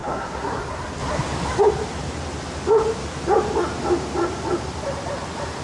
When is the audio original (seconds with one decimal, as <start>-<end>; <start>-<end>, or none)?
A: 0.6-5.6